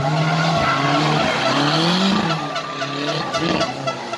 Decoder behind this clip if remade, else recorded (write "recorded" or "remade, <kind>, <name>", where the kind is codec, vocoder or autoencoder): recorded